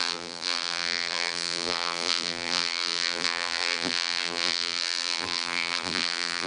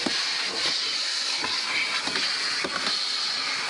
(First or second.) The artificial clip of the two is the first